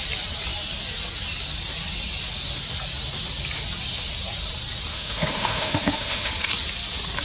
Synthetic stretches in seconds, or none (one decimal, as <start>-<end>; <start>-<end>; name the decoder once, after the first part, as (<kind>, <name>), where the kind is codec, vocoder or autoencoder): 4.9-6.3 (autoencoder, DAC-VAE)